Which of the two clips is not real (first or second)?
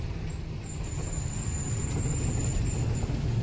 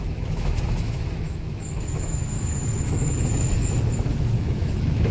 second